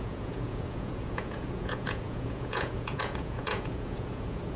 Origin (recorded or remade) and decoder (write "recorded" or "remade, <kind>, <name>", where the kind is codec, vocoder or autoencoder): remade, vocoder, Vocos